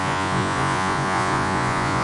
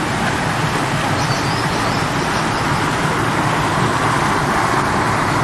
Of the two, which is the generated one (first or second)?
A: first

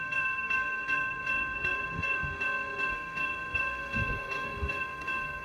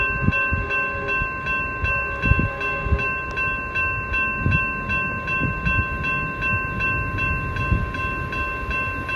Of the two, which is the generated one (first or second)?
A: first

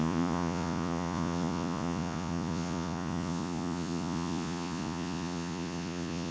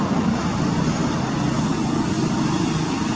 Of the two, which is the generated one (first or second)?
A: first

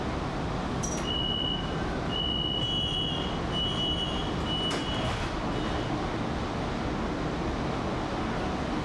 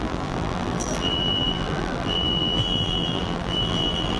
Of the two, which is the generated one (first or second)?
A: second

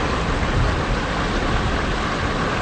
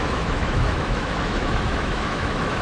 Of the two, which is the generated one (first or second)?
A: second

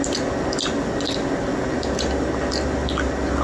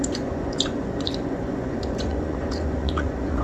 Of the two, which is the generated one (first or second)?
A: second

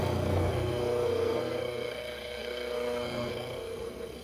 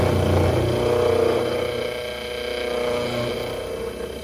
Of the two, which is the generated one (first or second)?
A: first